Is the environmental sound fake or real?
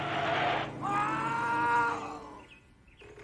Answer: real